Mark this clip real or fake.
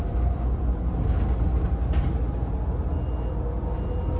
real